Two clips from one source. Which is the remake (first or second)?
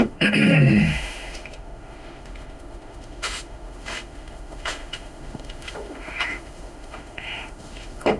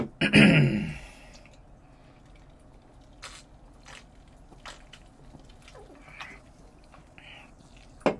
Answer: first